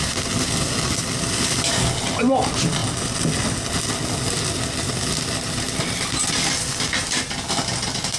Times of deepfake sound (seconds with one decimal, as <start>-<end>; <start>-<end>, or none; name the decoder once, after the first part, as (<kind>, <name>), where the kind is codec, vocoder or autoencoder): none